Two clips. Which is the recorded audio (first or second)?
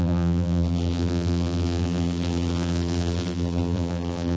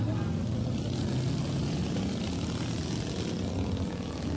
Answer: second